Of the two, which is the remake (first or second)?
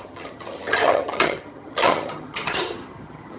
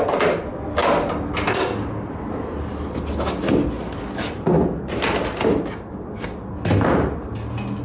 first